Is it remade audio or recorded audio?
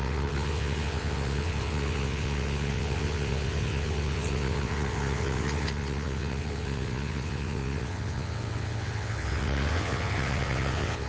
remade